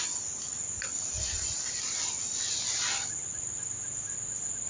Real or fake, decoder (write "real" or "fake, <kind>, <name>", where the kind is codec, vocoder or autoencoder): real